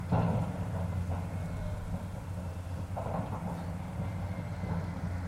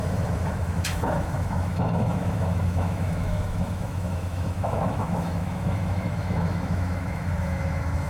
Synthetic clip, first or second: second